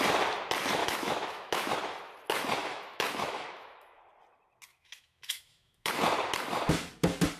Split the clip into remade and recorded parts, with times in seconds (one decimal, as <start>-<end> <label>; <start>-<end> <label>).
0.0-0.8 recorded; 0.8-1.7 remade; 1.7-2.6 recorded; 2.6-4.0 remade; 4.0-4.7 recorded; 4.7-5.9 remade; 5.9-7.4 recorded